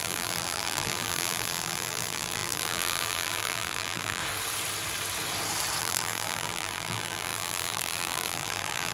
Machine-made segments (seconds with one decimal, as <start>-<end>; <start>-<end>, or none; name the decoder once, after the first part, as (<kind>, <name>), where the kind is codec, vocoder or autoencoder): 0.0-4.2 (vocoder, BigVGAN v2); 5.8-8.9